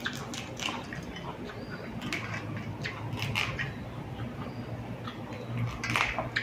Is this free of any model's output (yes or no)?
yes